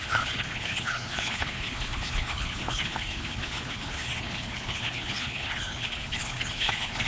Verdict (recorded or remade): remade